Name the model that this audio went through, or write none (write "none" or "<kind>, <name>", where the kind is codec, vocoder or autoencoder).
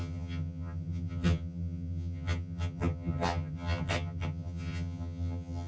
vocoder, HiFi-GAN